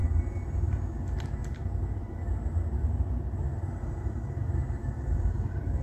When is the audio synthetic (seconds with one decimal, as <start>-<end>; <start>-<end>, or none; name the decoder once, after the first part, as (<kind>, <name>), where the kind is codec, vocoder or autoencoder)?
1.8-5.8 (vocoder, BigVGAN v2)